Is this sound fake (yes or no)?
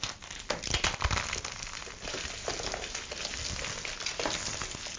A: no